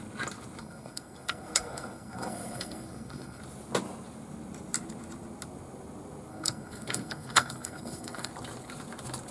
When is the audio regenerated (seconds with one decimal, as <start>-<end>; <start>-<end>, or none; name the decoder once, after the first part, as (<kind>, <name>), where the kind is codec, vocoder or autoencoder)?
0.6-3.4 (codec, SNAC); 6.3-8.3